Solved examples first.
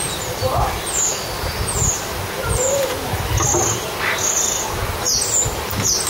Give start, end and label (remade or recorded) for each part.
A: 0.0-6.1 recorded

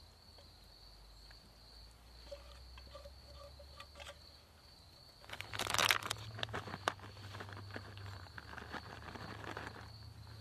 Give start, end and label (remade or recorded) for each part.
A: 0.0-10.4 recorded

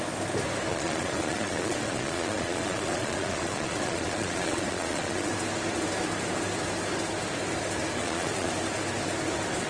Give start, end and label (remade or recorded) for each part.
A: 0.0-0.7 recorded; 0.7-5.3 remade; 5.3-8.0 recorded; 8.0-8.5 remade; 8.5-9.7 recorded